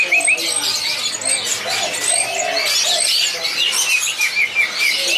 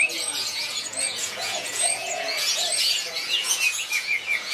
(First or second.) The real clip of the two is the first